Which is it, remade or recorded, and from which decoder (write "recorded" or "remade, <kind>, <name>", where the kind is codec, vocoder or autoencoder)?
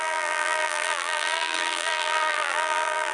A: remade, vocoder, BigVGAN v2